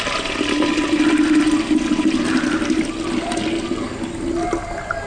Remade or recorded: recorded